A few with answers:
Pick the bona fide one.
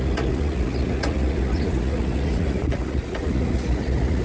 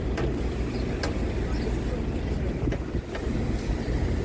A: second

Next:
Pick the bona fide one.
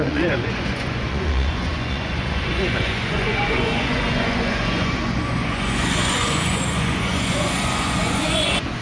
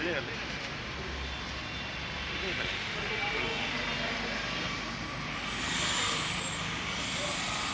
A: second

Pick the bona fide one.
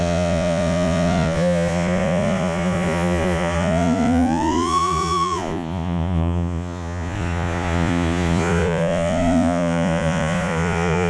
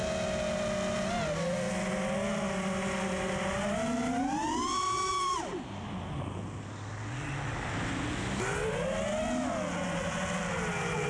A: second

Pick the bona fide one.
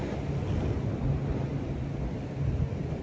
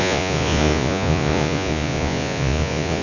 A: first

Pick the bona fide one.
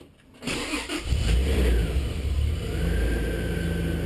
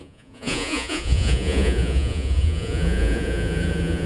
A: first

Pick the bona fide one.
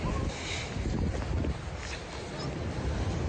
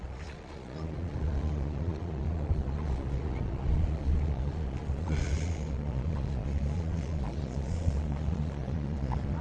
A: first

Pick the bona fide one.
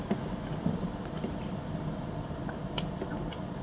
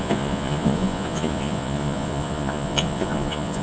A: first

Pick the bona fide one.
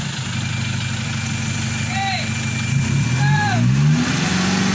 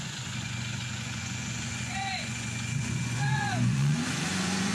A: first